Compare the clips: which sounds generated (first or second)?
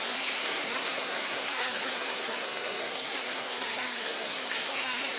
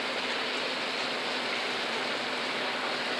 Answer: first